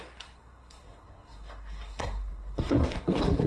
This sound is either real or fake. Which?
fake